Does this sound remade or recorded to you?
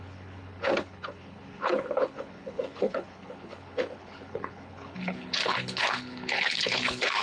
remade